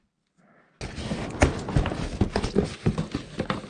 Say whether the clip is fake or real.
real